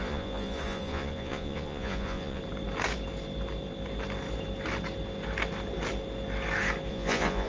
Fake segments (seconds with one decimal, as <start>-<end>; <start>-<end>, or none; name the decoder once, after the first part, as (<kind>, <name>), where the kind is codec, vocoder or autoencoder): 0.0-2.4 (vocoder, Vocos); 6.9-7.5